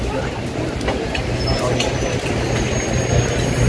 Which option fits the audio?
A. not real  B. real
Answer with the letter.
B